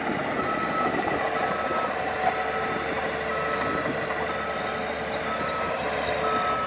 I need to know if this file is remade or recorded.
recorded